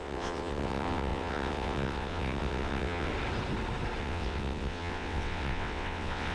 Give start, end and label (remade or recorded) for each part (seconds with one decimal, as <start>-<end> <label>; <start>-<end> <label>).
0.0-3.1 remade; 3.1-4.0 recorded; 4.0-6.3 remade